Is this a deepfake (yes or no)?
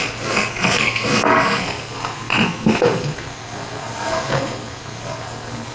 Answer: yes